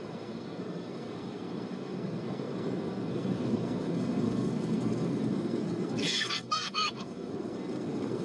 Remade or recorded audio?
remade